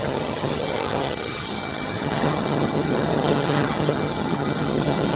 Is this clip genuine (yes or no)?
no